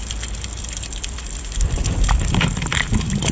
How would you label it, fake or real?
real